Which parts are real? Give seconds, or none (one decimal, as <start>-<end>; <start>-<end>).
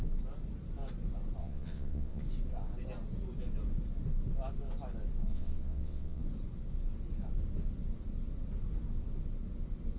0.0-1.4; 2.2-5.3; 6.2-10.0